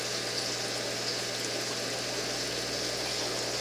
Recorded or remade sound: recorded